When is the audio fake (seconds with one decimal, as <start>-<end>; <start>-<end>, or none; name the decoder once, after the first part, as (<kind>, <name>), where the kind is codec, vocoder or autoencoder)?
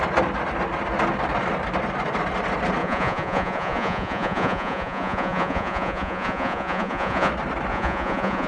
2.8-7.3 (vocoder, Vocos); 7.7-8.5